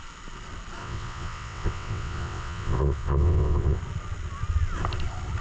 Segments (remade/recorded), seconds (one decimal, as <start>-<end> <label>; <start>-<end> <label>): 0.0-0.8 recorded; 0.8-3.8 remade; 3.8-5.4 recorded